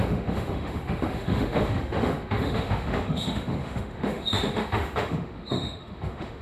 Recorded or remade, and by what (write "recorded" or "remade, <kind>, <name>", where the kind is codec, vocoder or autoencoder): remade, autoencoder, DAC-VAE